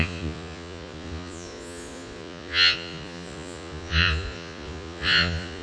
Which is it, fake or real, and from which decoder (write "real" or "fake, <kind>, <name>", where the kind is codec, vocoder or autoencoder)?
fake, vocoder, Vocos